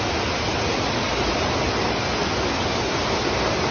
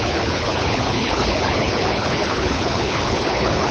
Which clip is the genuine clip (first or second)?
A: first